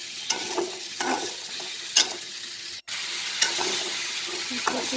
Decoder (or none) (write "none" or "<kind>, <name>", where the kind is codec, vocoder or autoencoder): vocoder, HiFi-GAN